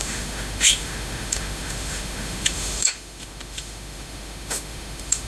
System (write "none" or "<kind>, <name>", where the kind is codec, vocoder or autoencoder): autoencoder, DAC-VAE